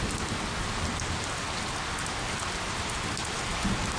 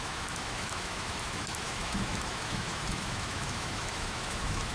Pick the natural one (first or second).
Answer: first